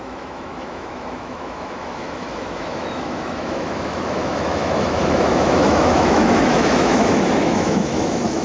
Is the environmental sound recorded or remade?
remade